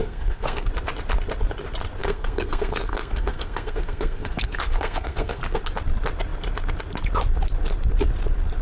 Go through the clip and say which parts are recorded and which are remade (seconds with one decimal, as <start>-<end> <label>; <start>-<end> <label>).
0.0-0.7 remade; 0.7-2.0 recorded; 2.0-5.6 remade; 5.6-8.6 recorded